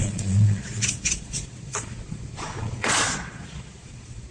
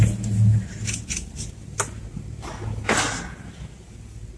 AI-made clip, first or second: first